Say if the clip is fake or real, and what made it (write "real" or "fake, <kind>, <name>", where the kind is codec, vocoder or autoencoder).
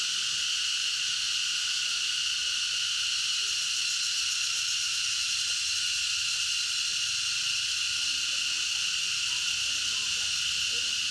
real